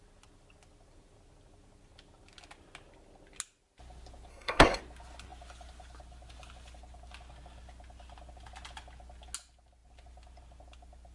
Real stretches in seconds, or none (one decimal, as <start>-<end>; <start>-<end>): 0.0-4.3; 4.8-11.1